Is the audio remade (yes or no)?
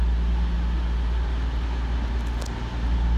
no